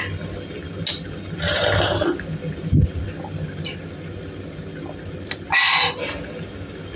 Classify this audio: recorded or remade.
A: recorded